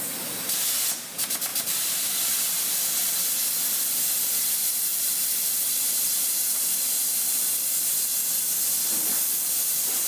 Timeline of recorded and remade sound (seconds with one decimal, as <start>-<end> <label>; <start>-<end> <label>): 0.0-1.5 recorded; 1.5-2.4 remade; 2.4-4.9 recorded; 4.9-7.5 remade; 7.5-10.1 recorded